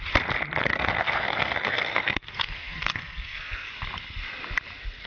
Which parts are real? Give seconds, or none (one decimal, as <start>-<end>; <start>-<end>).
0.0-0.6; 3.7-5.1